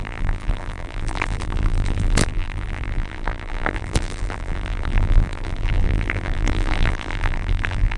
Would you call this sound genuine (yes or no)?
no